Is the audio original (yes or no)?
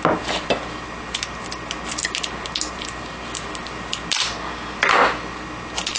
yes